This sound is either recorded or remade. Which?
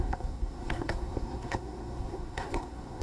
remade